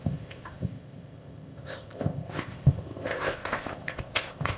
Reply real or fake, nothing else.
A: fake